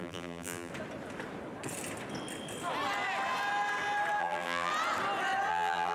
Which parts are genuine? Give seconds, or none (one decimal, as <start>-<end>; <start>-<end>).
0.7-4.2; 4.7-5.5

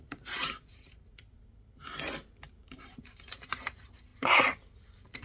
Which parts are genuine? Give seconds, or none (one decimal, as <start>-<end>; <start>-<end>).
1.1-2.8; 4.1-4.8

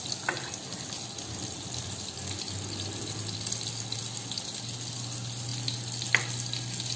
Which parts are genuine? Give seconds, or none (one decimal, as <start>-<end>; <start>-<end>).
0.0-7.0

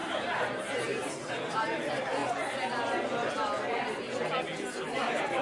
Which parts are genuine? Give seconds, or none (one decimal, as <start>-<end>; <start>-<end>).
2.2-4.9

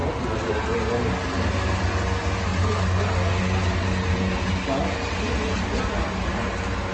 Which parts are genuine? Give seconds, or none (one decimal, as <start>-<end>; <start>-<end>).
0.0-6.9

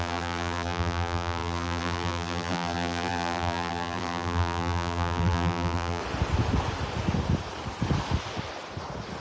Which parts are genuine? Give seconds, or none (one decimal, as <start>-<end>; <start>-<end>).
6.0-9.2

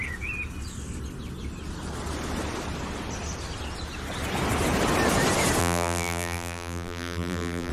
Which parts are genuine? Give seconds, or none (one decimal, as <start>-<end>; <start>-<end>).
0.0-5.6